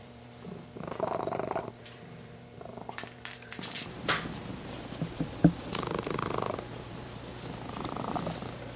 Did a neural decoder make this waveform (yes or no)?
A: yes